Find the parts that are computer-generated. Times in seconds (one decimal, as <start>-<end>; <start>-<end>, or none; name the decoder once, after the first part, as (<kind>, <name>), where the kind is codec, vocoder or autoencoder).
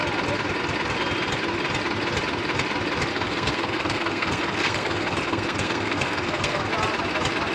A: 3.1-6.7 (codec, SNAC)